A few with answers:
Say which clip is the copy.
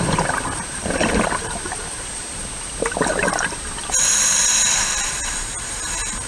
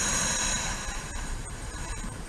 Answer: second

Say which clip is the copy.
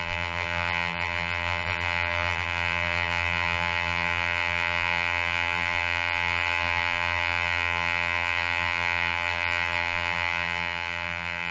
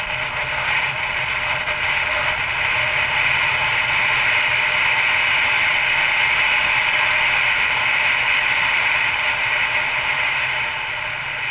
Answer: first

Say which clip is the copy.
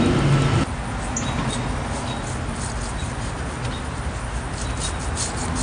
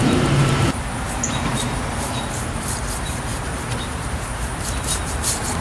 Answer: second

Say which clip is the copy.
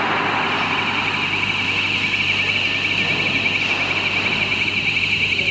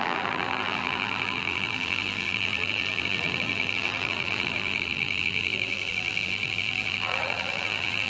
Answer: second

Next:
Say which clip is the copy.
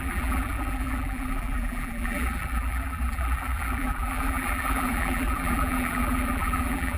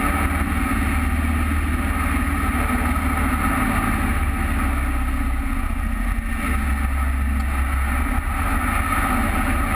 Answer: first